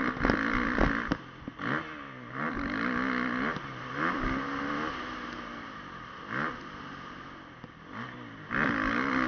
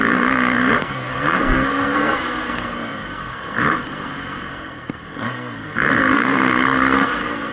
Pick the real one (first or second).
first